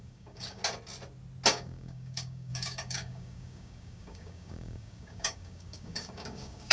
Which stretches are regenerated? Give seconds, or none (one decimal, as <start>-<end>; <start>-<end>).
0.0-0.6; 1.5-6.7